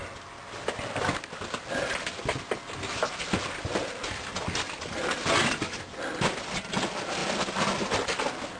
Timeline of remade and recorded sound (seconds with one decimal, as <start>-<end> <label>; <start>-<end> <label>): 0.0-8.6 recorded